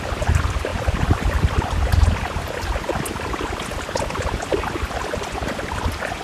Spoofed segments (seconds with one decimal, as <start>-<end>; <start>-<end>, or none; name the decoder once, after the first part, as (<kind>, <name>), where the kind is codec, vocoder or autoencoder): 0.7-1.4 (vocoder, BigVGAN v2)

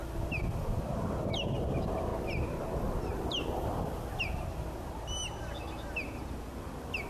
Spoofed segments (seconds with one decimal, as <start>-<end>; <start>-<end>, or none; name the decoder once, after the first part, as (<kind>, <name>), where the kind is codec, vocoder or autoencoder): 0.0-2.1 (vocoder, BigVGAN v2); 3.5-5.2; 6.3-7.1

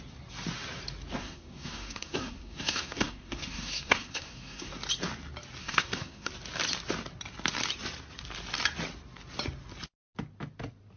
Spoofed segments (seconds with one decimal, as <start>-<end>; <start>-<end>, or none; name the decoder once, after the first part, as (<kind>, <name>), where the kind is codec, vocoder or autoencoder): 1.2-4.7 (codec, SNAC); 5.6-6.3

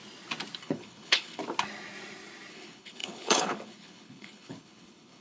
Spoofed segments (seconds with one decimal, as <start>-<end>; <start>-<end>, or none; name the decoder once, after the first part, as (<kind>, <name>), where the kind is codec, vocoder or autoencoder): 0.6-1.4 (codec, HILCodec); 2.5-5.2

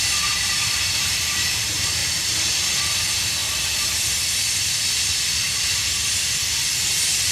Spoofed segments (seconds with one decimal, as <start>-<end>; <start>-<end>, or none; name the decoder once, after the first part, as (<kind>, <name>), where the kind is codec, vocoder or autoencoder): 0.0-3.4 (vocoder, BigVGAN v2); 6.6-7.3

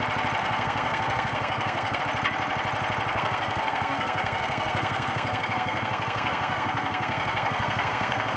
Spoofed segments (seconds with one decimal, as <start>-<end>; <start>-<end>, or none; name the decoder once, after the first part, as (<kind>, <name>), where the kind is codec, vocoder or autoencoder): 0.4-2.0 (codec, SNAC); 3.1-8.4